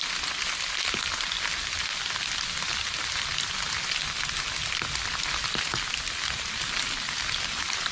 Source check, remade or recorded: recorded